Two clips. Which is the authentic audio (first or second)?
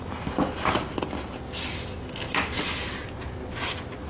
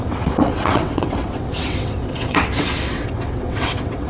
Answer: first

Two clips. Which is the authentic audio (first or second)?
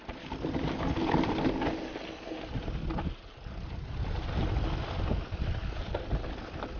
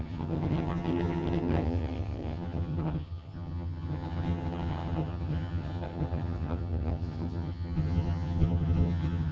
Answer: first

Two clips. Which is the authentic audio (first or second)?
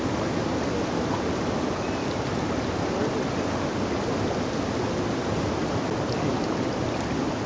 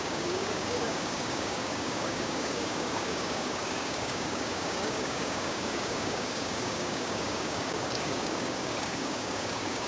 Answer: first